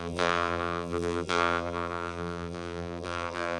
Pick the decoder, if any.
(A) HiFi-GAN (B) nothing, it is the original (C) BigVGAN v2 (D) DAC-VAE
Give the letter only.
C